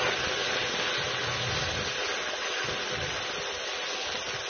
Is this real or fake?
real